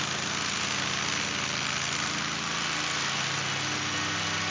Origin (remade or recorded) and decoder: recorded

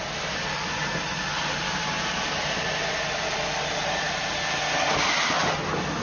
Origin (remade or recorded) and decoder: recorded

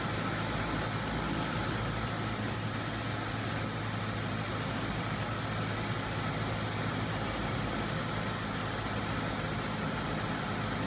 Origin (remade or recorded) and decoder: recorded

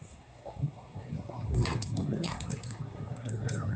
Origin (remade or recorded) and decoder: remade, codec, SNAC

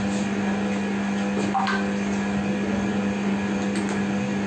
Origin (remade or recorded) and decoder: recorded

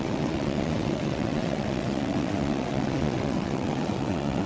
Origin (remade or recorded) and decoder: remade, vocoder, WaveNeXt